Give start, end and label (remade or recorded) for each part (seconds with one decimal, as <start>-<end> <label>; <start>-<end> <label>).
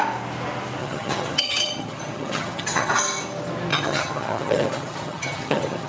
0.0-0.8 recorded; 0.8-2.9 remade; 2.9-3.7 recorded; 3.7-5.9 remade